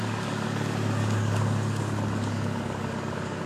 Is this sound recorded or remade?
remade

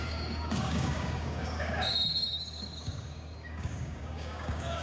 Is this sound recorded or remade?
remade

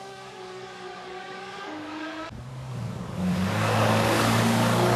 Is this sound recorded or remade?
remade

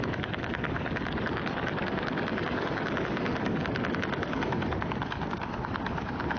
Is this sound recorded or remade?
remade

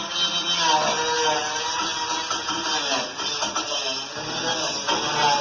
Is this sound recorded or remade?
recorded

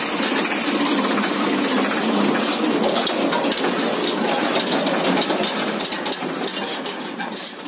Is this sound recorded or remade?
recorded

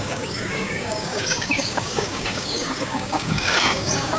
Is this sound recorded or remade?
remade